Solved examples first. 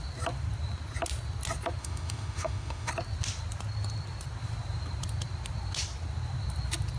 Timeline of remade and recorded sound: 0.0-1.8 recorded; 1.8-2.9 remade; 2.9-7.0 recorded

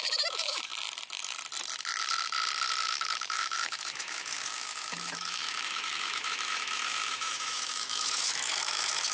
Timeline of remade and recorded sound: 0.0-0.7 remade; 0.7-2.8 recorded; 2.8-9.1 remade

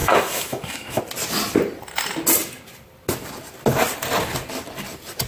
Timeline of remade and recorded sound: 0.0-1.0 remade; 1.0-5.3 recorded